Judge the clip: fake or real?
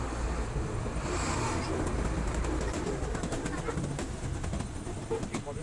real